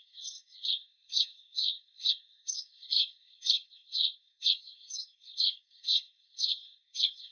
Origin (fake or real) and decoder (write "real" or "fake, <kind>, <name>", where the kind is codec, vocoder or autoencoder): fake, codec, SNAC